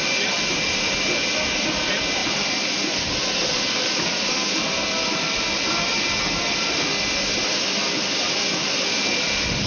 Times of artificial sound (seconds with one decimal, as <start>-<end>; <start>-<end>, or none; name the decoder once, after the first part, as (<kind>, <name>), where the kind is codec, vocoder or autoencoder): none